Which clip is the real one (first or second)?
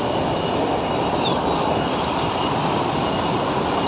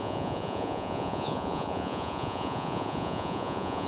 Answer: first